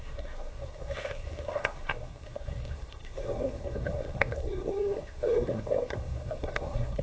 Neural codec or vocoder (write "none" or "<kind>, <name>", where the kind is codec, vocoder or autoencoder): codec, SNAC